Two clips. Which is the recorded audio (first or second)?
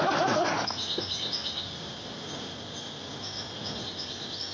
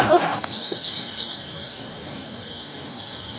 first